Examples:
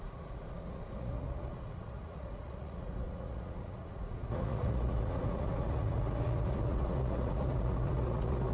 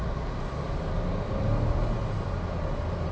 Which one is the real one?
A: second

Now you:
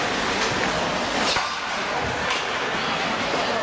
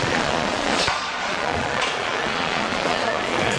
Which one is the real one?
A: first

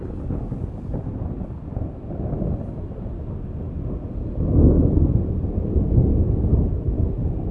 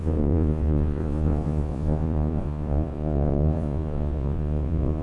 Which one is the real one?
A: first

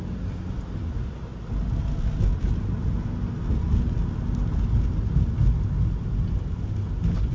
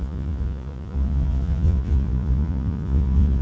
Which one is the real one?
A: first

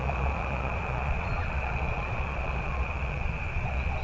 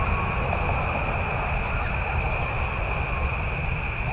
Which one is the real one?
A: second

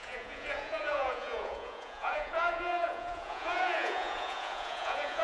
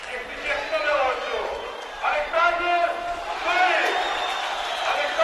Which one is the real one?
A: second